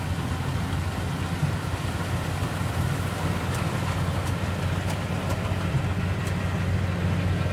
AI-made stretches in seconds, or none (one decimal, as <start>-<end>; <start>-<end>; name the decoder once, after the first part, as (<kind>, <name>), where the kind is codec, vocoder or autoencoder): 1.4-5.8 (vocoder, BigVGAN v2)